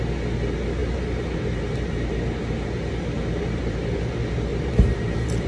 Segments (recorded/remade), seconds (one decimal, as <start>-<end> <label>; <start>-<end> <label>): 0.0-0.8 recorded; 0.8-4.1 remade; 4.1-4.5 recorded; 4.5-5.5 remade